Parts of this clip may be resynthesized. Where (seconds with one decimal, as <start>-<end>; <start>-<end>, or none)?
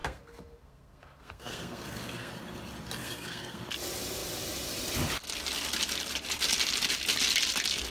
0.0-2.3; 3.0-3.6